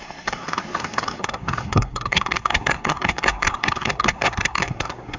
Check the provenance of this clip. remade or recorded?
remade